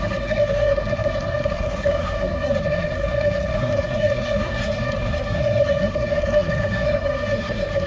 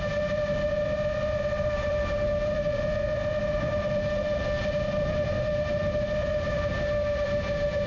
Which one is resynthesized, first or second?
first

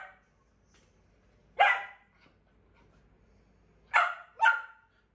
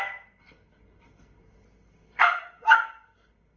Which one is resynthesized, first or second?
second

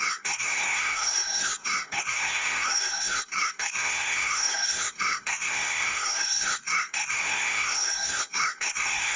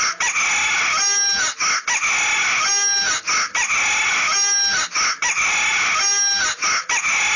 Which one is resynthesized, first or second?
first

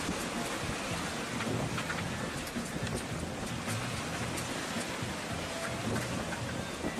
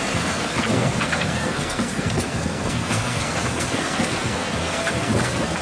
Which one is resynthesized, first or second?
second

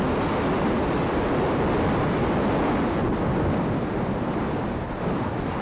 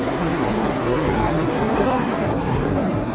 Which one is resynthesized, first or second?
second